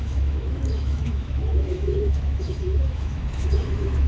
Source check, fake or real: fake